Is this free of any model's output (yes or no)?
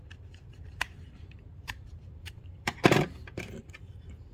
no